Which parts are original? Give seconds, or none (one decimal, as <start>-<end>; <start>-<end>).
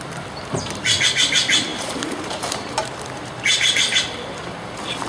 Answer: 0.0-1.7; 4.0-5.1